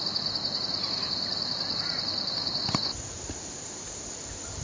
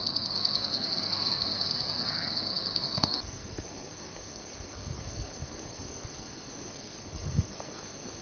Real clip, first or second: first